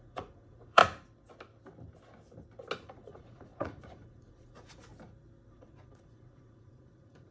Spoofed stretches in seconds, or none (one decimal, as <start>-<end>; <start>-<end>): 0.0-0.8; 2.8-4.9; 5.5-7.3